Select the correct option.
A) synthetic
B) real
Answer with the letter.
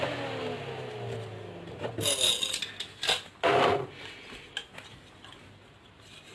B